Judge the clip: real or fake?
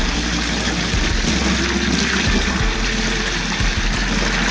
real